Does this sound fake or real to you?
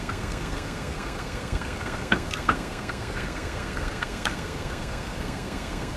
fake